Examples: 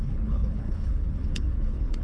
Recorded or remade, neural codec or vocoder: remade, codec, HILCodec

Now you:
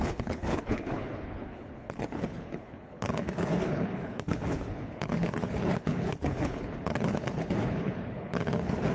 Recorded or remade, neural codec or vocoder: remade, codec, HILCodec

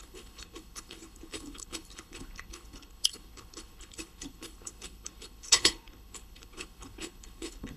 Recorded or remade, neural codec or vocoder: remade, codec, HILCodec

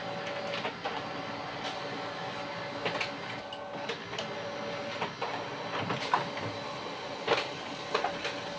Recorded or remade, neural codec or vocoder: recorded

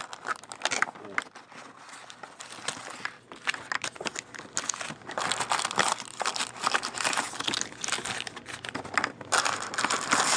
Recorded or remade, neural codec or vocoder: recorded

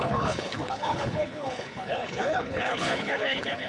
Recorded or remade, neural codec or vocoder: remade, codec, HILCodec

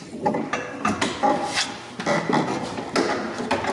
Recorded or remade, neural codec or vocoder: recorded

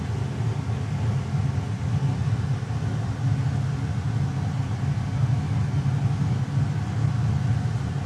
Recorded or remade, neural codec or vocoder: recorded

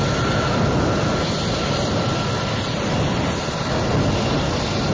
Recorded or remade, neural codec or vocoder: recorded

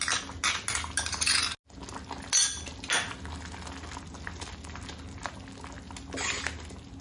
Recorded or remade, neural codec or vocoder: recorded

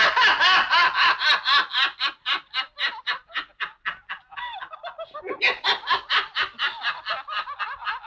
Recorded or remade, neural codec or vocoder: recorded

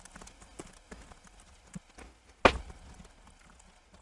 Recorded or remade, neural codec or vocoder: recorded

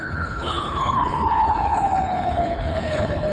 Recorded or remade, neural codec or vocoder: remade, codec, HILCodec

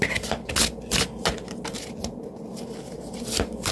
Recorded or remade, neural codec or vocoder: recorded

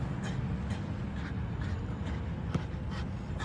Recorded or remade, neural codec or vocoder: recorded